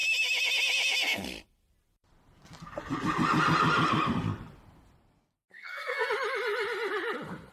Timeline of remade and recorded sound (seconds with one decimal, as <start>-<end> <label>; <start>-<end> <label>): 0.0-5.5 recorded; 5.5-6.1 remade; 6.1-7.5 recorded